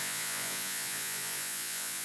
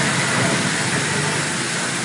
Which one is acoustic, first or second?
second